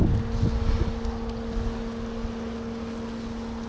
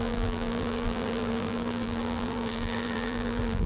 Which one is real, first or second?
first